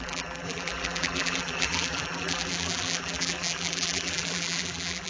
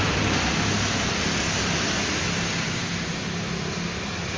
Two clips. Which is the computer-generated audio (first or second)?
first